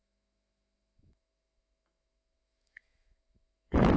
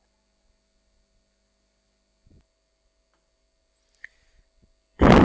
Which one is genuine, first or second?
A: second